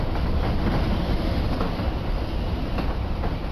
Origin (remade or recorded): recorded